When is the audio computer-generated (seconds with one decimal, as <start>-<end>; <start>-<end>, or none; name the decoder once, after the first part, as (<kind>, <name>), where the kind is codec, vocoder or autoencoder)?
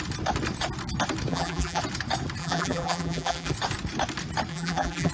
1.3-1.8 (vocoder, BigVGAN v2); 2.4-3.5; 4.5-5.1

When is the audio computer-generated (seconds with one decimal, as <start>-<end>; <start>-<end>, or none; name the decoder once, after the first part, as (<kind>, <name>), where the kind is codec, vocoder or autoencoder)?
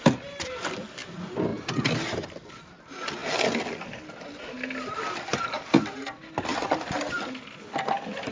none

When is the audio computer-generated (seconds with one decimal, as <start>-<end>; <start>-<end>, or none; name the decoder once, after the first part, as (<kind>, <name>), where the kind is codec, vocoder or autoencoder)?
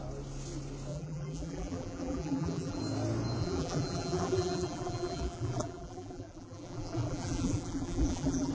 0.9-2.8 (vocoder, BigVGAN v2); 3.4-8.5